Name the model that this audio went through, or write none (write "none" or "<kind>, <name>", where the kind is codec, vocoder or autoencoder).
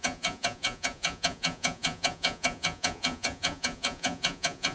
vocoder, Vocos